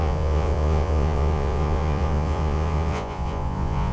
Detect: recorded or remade remade